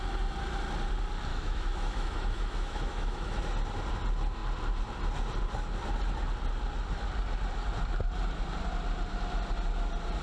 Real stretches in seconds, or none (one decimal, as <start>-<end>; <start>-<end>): 0.0-1.3; 3.4-10.2